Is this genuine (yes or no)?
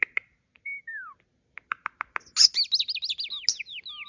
yes